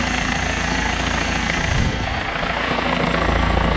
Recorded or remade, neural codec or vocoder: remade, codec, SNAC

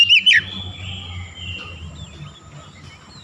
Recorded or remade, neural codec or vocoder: recorded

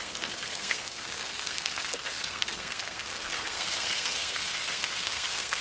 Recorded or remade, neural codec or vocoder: remade, codec, SNAC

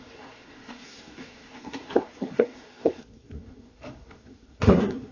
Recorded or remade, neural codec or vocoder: remade, codec, SNAC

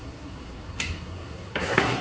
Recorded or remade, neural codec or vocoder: remade, codec, SNAC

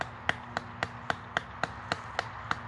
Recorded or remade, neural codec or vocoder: recorded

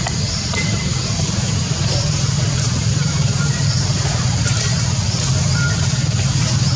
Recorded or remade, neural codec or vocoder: recorded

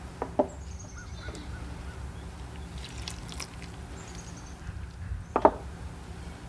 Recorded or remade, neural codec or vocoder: recorded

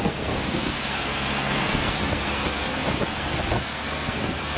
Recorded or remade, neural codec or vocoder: remade, codec, SNAC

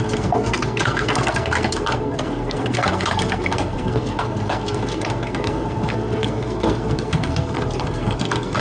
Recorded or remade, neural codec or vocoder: remade, codec, SNAC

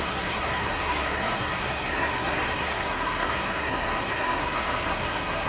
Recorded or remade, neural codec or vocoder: remade, codec, SNAC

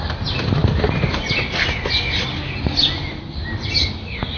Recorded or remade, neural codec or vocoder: recorded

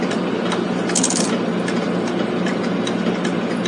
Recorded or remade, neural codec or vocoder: recorded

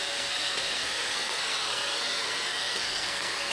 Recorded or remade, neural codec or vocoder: remade, codec, SNAC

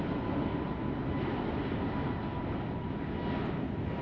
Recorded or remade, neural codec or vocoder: recorded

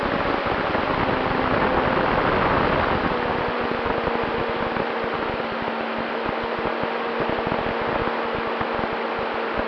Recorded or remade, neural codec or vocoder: recorded